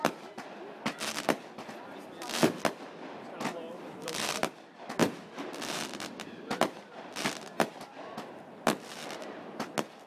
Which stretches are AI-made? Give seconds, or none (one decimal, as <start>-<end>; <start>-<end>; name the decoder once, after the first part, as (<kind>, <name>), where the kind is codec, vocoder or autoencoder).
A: 3.5-4.5 (vocoder, BigVGAN v2); 5.0-6.9